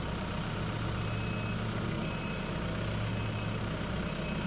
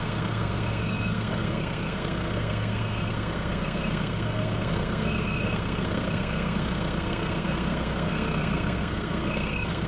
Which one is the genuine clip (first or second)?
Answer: first